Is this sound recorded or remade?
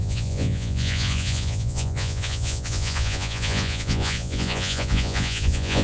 remade